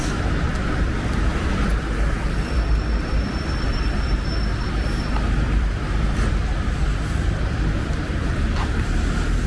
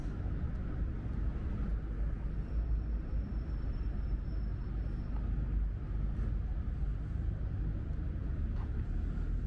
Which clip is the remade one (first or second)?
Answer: first